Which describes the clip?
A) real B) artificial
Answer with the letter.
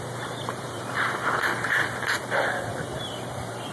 B